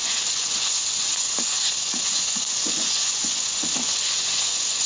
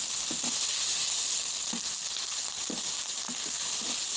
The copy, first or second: first